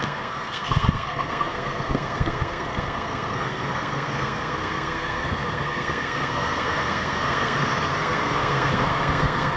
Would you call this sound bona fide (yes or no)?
no